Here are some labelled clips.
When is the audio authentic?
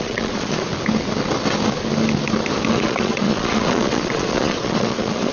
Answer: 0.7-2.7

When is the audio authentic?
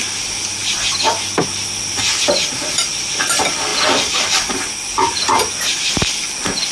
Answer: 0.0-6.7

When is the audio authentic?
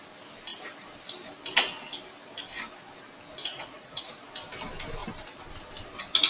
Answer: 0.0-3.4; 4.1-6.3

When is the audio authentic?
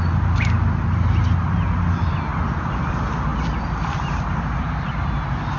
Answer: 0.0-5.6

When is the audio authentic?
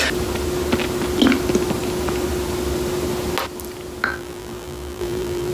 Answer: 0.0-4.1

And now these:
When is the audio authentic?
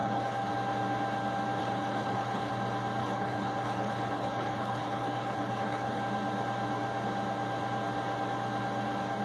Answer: 0.5-1.6; 2.5-3.0; 6.0-9.2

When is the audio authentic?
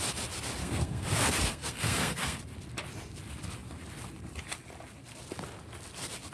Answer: 0.0-0.6; 2.4-6.3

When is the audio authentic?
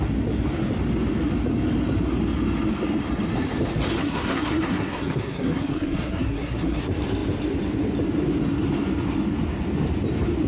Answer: 0.0-4.0; 6.8-10.5